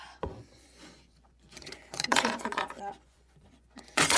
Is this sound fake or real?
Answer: fake